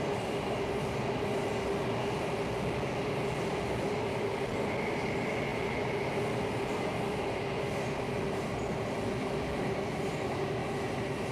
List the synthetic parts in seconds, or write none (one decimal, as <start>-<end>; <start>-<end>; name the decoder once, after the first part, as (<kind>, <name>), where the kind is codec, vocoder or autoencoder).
none